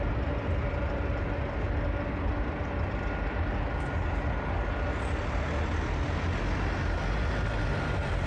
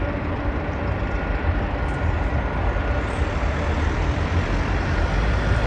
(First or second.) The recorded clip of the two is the first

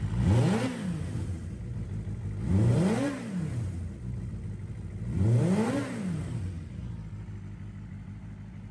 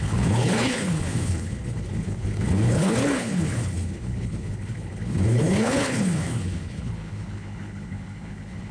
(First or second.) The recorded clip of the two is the first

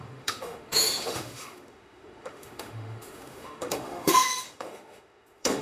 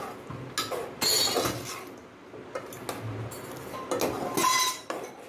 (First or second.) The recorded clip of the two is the second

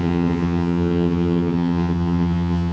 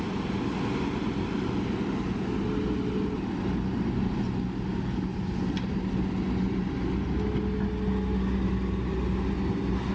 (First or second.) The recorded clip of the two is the second